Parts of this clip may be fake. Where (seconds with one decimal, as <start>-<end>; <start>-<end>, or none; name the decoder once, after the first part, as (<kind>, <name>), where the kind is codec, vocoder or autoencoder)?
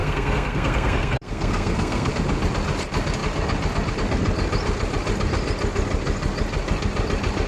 0.0-2.1 (codec, SNAC)